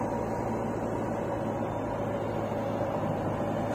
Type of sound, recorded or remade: recorded